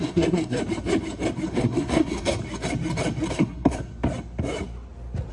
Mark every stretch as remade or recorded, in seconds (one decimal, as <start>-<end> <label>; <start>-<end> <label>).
0.0-0.6 remade; 0.6-1.5 recorded; 1.5-2.4 remade; 2.4-3.3 recorded; 3.3-3.9 remade; 3.9-5.3 recorded